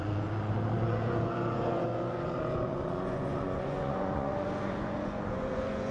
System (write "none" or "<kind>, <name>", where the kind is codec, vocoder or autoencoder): vocoder, Vocos